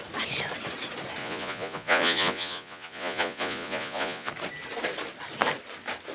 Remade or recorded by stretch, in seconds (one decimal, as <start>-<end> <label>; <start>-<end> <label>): 0.0-1.2 recorded; 1.2-4.3 remade; 4.3-6.1 recorded